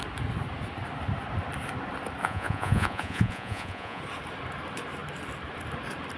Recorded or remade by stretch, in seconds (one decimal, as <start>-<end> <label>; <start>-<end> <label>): 0.0-2.2 recorded; 2.2-4.0 remade; 4.0-6.2 recorded